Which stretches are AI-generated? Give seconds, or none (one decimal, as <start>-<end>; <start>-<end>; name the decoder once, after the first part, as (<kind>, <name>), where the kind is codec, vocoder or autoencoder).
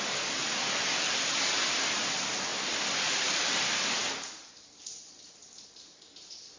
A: 0.0-4.0 (vocoder, BigVGAN v2); 4.8-6.6